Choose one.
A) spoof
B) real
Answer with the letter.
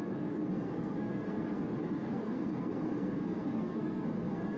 A